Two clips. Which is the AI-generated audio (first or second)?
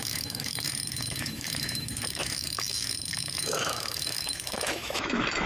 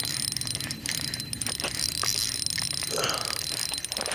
first